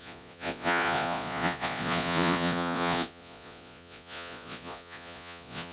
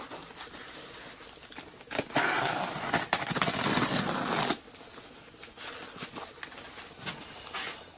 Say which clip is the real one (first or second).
second